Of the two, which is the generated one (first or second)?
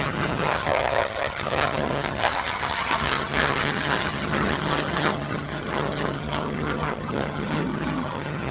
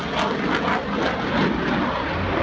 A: first